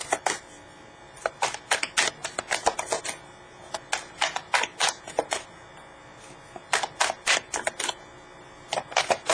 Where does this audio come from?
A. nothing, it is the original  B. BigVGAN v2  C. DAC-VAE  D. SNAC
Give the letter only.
A